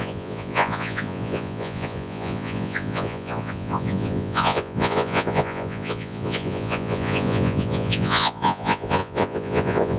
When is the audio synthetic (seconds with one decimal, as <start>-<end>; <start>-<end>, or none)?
0.0-10.0